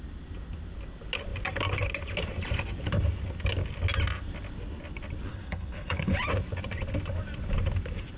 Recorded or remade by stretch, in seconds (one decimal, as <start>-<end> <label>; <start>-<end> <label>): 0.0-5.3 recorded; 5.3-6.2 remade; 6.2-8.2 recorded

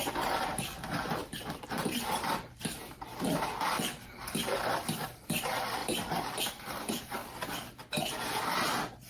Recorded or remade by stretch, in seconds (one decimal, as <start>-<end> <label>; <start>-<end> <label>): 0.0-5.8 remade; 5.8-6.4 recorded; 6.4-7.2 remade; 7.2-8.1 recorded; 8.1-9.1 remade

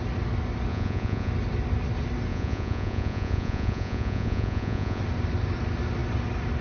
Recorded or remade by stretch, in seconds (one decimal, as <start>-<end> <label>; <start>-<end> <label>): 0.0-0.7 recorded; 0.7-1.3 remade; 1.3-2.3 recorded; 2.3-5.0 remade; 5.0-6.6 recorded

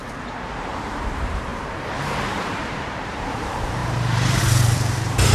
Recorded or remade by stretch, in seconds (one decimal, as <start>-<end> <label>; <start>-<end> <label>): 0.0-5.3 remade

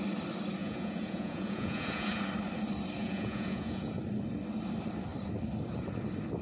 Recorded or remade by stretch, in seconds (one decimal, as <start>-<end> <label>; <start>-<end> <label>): 0.0-0.6 recorded; 0.6-2.2 remade; 2.2-3.0 recorded; 3.0-4.0 remade; 4.0-6.4 recorded

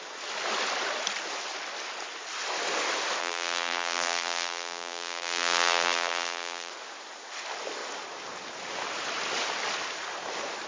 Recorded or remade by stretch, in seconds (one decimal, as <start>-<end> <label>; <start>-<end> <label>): 0.0-3.2 recorded; 3.2-6.7 remade; 6.7-10.7 recorded